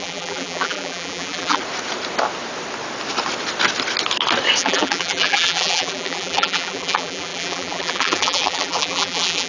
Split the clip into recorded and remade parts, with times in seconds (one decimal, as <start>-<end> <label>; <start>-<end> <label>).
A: 0.0-1.6 remade; 1.6-4.6 recorded; 4.6-9.5 remade